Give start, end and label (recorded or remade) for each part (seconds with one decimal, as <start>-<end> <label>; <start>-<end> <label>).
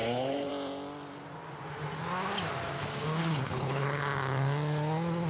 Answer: 0.0-0.5 remade; 0.5-3.2 recorded; 3.2-4.0 remade; 4.0-5.3 recorded